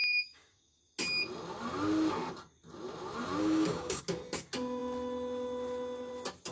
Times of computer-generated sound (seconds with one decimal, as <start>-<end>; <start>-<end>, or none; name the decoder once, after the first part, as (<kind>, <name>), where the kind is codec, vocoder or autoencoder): 0.0-0.8 (codec, DAC); 3.4-4.0